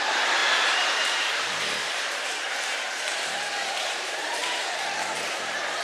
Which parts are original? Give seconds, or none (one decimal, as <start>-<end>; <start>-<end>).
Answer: none